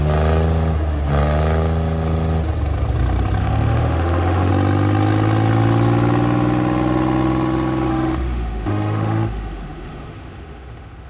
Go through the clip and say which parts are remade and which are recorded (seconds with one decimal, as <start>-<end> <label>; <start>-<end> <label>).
0.0-3.4 recorded; 3.4-4.5 remade; 4.5-7.9 recorded; 7.9-11.1 remade